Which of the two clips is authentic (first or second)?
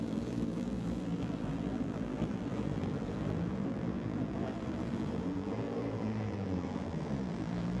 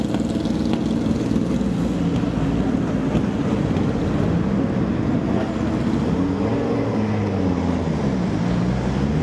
second